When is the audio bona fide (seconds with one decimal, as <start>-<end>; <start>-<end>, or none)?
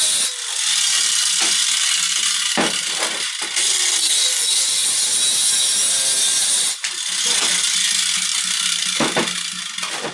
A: 0.0-10.1